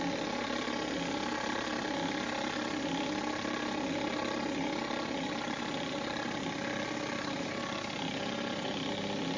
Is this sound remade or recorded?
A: recorded